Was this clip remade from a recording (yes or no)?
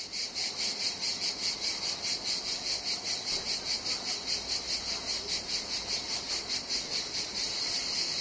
no